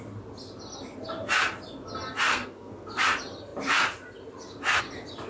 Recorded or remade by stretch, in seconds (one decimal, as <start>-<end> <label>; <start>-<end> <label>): 0.0-2.3 recorded; 2.3-3.0 remade; 3.0-5.3 recorded